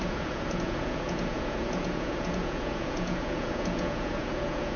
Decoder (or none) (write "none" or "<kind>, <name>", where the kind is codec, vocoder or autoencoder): vocoder, Vocos